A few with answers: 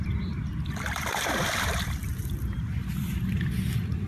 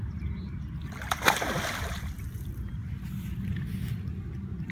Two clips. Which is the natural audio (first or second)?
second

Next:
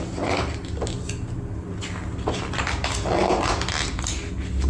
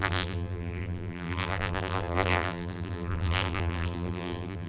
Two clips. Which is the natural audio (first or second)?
first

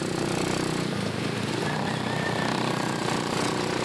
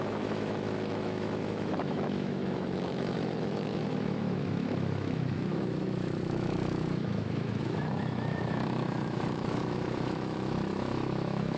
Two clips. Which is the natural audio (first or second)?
first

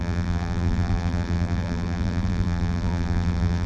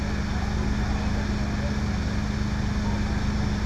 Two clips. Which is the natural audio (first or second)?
second